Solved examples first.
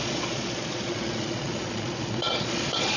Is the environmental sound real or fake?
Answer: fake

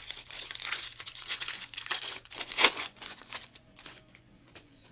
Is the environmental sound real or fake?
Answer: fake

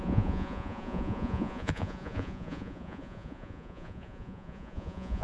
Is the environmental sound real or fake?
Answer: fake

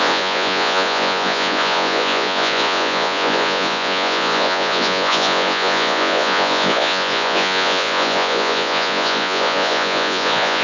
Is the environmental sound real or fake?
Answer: fake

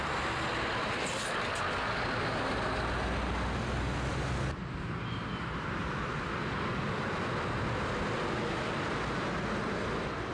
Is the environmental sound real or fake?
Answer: real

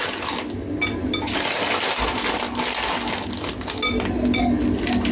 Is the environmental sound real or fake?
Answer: real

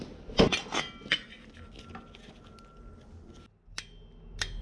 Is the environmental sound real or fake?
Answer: real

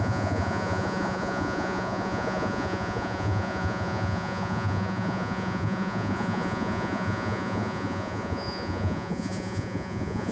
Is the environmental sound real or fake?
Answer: fake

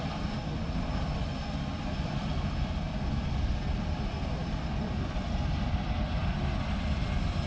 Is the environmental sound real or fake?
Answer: real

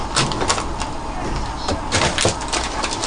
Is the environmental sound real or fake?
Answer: real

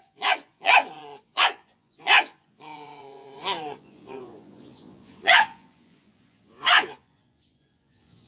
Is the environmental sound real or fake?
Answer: fake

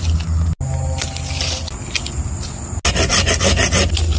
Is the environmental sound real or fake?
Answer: real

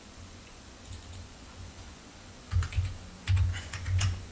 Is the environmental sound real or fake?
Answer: fake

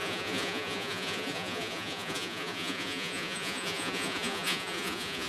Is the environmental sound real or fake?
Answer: fake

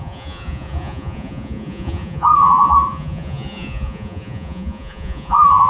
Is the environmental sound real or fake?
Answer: fake